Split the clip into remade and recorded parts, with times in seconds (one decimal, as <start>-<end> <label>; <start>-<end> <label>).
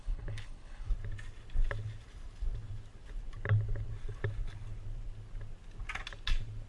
0.0-0.9 remade; 0.9-6.7 recorded